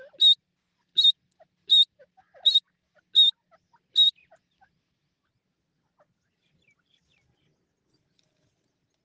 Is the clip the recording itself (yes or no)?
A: yes